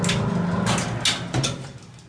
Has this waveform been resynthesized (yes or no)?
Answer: no